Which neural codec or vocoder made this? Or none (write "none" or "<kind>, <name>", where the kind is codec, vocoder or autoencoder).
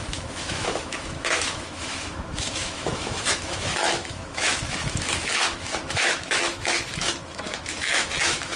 autoencoder, DAC-VAE